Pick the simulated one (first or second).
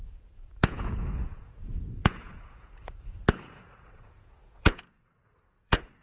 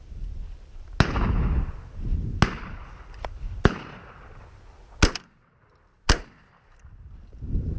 first